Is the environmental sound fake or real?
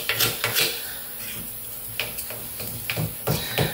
real